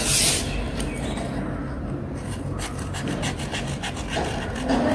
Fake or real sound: real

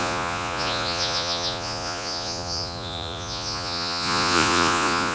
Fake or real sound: fake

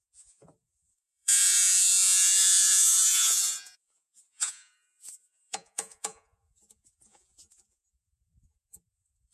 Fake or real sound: fake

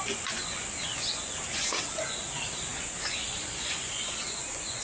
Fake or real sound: fake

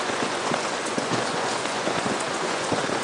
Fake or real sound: fake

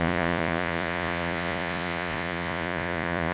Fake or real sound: fake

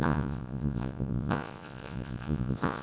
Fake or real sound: fake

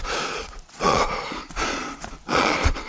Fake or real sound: fake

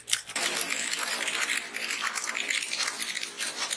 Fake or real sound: real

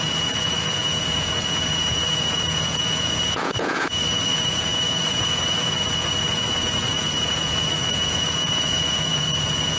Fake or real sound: fake